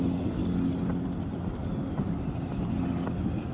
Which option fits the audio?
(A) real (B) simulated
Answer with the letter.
A